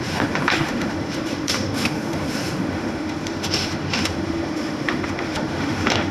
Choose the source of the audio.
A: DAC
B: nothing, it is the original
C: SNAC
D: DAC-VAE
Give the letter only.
D